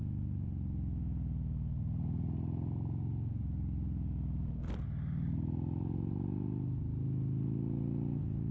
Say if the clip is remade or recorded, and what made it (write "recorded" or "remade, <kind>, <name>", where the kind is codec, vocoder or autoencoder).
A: recorded